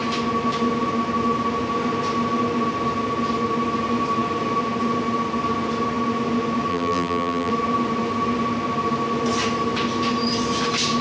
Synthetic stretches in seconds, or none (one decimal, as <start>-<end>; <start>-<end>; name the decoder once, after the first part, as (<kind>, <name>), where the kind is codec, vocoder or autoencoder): 6.7-7.5 (vocoder, BigVGAN v2)